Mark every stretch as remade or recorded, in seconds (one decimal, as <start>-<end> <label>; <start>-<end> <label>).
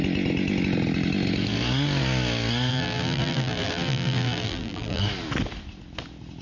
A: 0.0-2.7 recorded; 2.7-5.0 remade; 5.0-6.4 recorded